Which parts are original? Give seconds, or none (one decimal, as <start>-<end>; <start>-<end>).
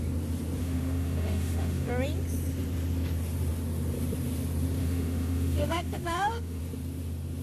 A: 0.0-0.6; 1.9-4.8; 6.6-7.4